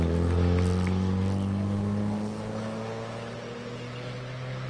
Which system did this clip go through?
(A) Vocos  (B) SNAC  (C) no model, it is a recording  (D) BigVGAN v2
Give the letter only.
C